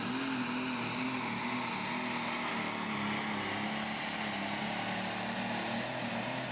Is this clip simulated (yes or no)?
no